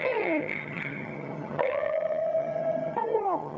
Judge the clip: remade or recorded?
remade